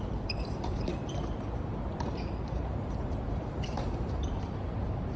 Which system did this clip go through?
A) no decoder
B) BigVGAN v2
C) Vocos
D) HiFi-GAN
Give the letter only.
B